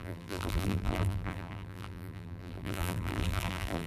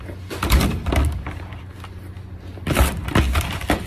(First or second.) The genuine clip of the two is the second